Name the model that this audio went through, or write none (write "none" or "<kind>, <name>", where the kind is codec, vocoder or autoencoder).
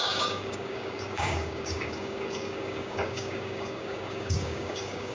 codec, DAC